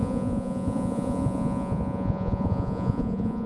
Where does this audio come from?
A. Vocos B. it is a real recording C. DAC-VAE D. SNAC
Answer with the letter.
A